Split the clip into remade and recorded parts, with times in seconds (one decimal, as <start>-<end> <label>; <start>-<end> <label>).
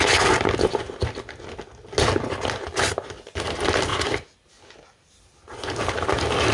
0.0-6.5 recorded